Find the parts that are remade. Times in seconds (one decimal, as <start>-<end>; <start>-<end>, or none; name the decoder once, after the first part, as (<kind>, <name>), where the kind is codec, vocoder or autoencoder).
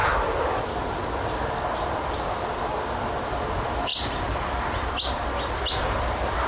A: 0.0-6.5 (vocoder, BigVGAN v2)